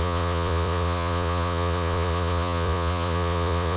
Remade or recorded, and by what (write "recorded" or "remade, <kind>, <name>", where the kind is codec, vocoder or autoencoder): remade, vocoder, Vocos